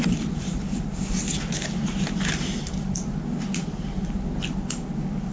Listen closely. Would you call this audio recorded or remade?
recorded